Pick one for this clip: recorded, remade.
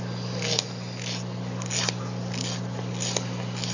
recorded